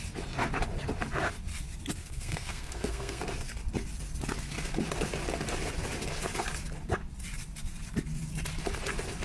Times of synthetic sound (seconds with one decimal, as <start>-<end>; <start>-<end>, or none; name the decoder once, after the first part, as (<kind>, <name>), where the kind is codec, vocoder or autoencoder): 2.0-3.2 (codec, SNAC)